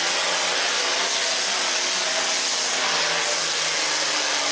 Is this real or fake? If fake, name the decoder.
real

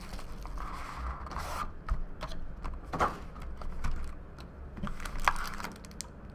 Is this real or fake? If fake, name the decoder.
real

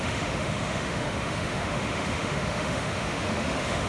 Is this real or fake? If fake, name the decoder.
fake, autoencoder, DAC-VAE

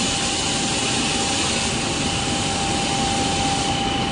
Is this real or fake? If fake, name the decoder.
real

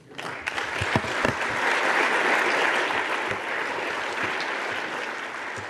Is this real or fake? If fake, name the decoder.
real